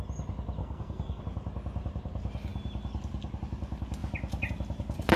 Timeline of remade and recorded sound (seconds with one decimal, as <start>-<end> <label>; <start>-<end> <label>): 0.0-0.6 recorded; 0.6-1.2 remade; 1.2-5.2 recorded